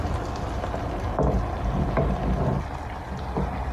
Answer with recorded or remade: recorded